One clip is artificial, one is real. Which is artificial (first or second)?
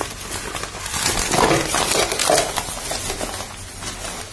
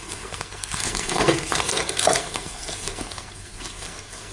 second